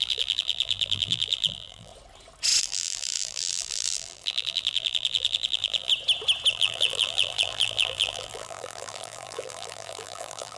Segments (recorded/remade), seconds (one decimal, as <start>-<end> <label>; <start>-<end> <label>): 0.0-1.9 remade; 1.9-2.6 recorded; 2.6-5.9 remade; 5.9-6.5 recorded; 6.5-10.6 remade